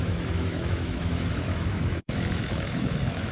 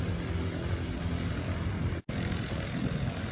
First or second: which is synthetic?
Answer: first